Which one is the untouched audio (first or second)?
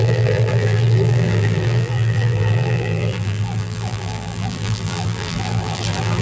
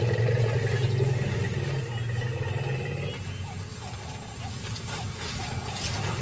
second